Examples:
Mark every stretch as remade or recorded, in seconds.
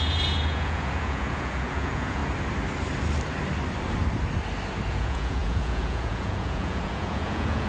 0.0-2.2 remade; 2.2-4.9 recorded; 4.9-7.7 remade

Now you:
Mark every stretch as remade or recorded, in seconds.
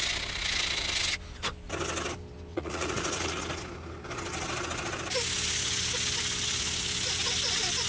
0.0-2.5 recorded; 2.5-3.4 remade; 3.4-7.9 recorded